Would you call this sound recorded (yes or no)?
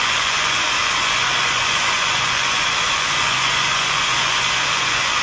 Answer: no